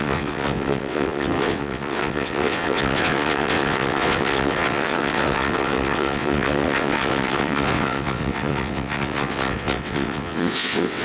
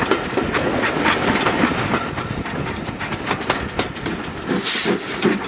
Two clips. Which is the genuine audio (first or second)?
second